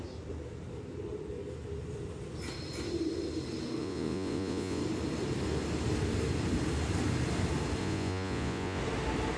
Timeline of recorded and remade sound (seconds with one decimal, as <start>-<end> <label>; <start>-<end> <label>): 0.0-3.8 recorded; 3.8-4.8 remade; 4.8-7.8 recorded; 7.8-8.8 remade; 8.8-9.4 recorded